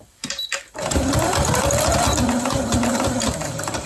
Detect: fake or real fake